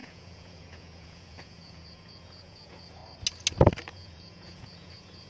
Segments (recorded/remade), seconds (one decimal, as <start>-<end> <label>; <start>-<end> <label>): 0.0-3.0 remade; 3.0-3.9 recorded; 3.9-5.3 remade